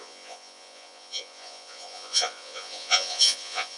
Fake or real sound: fake